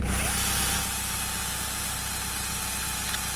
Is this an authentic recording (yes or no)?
yes